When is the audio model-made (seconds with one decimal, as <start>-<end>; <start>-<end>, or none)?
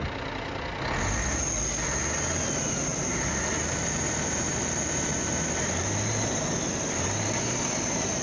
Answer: 2.9-8.2